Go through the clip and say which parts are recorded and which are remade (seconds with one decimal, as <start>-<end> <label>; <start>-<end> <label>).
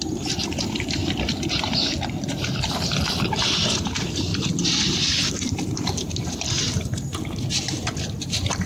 0.0-4.3 recorded; 4.3-8.7 remade